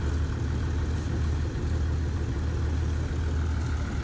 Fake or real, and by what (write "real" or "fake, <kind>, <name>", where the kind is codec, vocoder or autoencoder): real